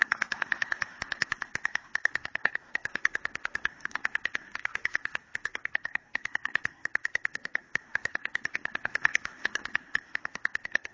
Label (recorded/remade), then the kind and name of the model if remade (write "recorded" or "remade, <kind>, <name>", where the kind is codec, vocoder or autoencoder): remade, codec, SNAC